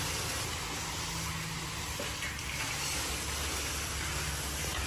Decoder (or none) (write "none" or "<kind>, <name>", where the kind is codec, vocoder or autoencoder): none